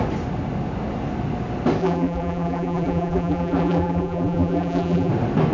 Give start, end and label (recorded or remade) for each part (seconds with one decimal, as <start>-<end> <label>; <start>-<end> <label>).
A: 0.0-1.8 recorded; 1.8-5.1 remade; 5.1-5.5 recorded